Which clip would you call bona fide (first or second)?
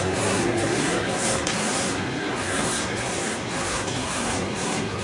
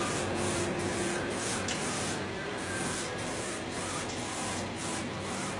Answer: second